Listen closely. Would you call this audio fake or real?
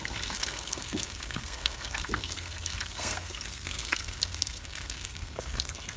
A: fake